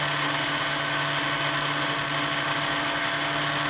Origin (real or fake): real